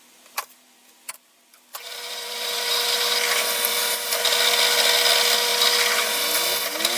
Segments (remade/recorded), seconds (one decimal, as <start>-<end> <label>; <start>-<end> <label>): 0.0-1.7 recorded; 1.7-3.0 remade; 3.0-3.7 recorded; 3.7-4.2 remade; 4.2-7.0 recorded